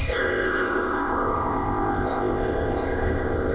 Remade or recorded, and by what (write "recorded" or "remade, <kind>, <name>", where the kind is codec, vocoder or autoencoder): remade, codec, ZipCodec